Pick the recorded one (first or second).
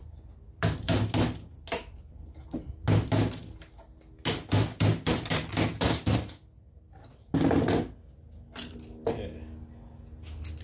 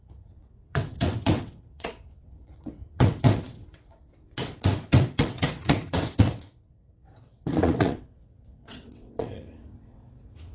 first